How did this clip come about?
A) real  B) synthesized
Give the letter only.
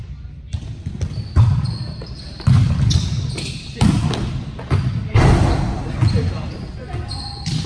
A